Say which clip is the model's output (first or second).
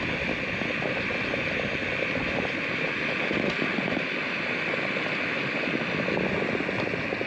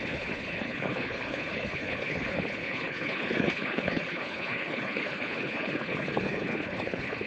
second